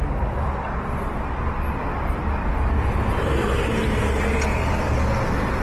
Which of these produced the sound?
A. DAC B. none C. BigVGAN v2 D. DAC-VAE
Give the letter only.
B